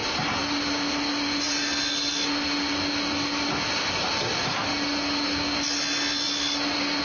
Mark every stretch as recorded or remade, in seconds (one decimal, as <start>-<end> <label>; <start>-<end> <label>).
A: 0.0-7.0 recorded